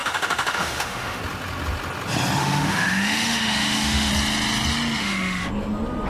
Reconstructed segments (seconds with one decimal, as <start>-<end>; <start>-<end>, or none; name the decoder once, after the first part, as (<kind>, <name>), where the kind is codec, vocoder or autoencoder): 0.0-1.2 (autoencoder, DAC-VAE); 2.4-4.1; 5.0-5.5

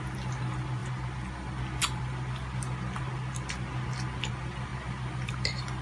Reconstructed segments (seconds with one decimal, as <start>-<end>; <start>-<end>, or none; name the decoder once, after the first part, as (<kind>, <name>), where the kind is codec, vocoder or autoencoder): none

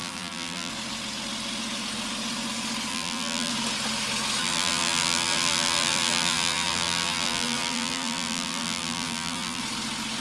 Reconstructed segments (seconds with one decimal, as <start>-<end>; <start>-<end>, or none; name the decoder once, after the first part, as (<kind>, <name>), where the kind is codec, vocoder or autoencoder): 0.0-0.7 (vocoder, BigVGAN v2); 2.9-3.5; 4.4-9.6